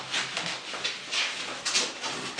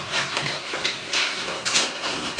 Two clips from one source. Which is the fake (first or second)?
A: second